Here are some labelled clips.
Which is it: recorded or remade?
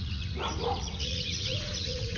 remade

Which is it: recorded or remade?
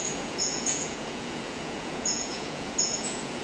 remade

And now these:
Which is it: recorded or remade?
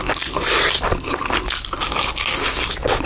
recorded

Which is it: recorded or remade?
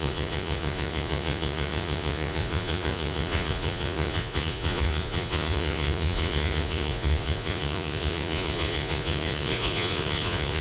remade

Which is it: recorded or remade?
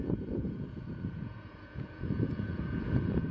remade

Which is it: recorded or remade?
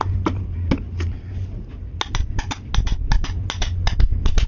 recorded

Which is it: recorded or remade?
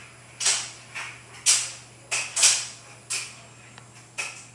recorded